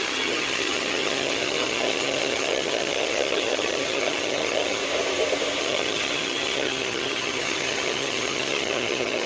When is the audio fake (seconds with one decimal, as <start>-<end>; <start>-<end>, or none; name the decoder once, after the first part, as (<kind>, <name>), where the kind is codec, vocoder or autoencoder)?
0.0-4.8 (vocoder, HiFi-GAN); 5.6-9.3